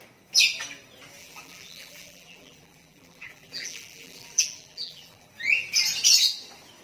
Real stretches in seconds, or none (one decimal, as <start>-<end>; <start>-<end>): 0.0-1.2; 5.3-6.8